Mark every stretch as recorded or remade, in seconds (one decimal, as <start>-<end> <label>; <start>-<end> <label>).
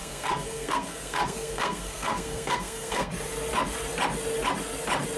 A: 0.0-3.1 remade; 3.1-5.2 recorded